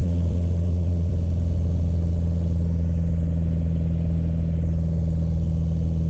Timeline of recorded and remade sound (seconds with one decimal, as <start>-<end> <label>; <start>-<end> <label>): 0.0-1.1 remade; 1.1-6.1 recorded